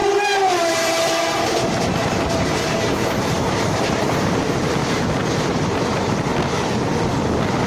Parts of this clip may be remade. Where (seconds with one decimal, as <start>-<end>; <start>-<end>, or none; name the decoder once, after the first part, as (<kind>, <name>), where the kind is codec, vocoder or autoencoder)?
0.0-4.8 (vocoder, BigVGAN v2); 5.6-6.3